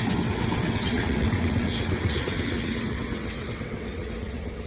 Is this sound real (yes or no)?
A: no